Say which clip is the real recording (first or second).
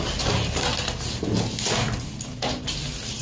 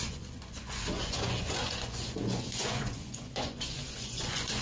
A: first